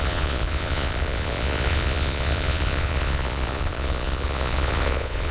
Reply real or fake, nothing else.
fake